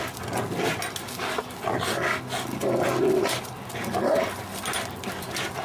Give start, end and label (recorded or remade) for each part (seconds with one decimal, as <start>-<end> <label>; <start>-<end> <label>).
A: 0.0-5.6 recorded

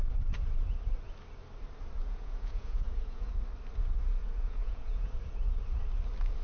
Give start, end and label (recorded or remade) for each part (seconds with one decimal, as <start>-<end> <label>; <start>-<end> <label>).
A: 0.0-2.0 recorded; 2.0-3.3 remade; 3.3-4.2 recorded; 4.2-5.1 remade; 5.1-6.4 recorded